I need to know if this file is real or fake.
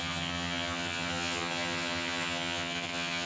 fake